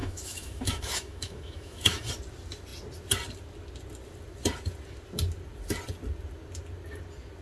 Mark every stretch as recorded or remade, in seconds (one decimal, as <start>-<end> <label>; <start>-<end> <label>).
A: 0.0-2.1 remade; 2.1-7.4 recorded